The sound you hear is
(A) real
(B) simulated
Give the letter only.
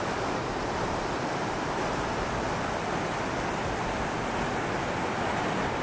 A